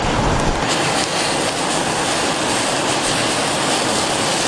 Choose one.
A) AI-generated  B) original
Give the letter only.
B